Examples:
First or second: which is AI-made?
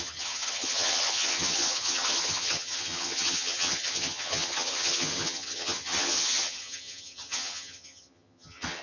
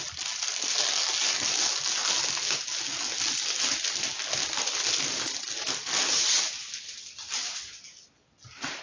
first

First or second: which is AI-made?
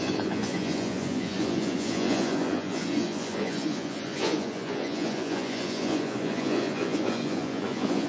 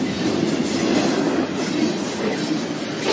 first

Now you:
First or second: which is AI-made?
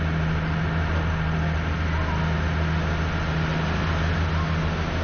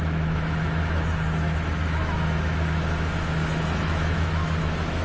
second